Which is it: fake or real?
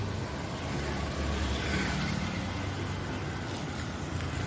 real